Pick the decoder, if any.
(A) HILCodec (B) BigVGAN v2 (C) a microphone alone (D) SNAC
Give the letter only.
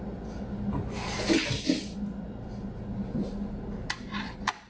C